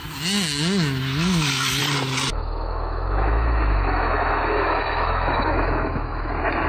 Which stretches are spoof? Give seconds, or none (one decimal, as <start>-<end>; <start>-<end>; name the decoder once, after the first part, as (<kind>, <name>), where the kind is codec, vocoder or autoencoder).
2.3-6.3 (autoencoder, DAC-VAE)